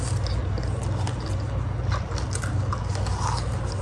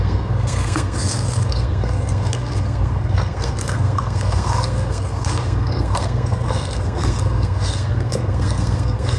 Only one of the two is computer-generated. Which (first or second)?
second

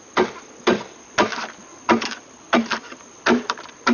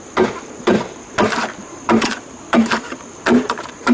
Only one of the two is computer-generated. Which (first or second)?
second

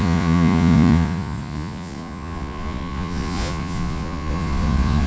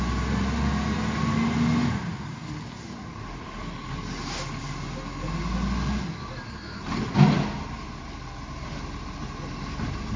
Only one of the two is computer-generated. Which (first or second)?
first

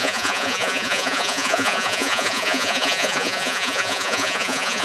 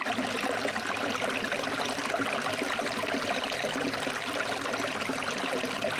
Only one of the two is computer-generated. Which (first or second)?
first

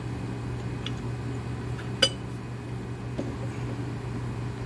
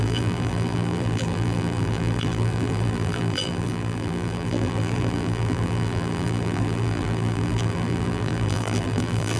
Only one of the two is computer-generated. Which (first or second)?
second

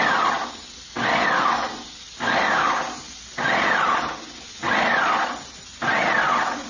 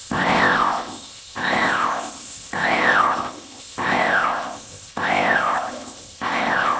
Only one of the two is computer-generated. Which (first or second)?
second